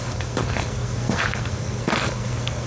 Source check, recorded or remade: remade